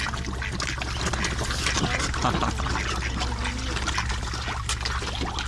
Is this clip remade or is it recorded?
recorded